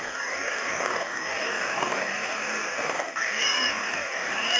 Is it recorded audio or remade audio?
remade